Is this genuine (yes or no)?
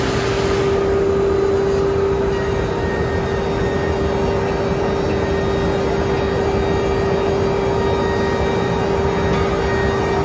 yes